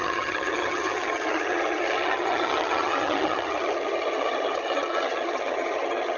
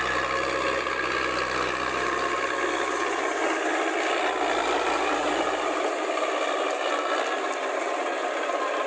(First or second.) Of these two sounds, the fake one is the first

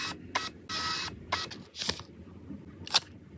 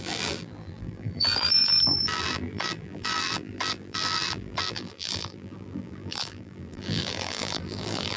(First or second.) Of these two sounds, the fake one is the second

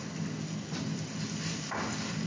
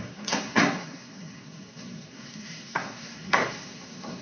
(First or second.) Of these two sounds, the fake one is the second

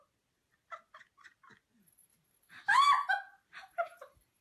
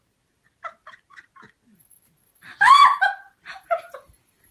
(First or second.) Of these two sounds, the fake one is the second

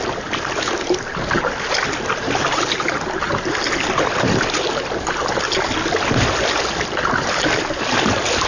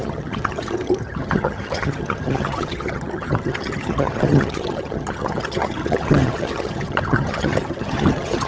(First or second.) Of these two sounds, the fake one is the second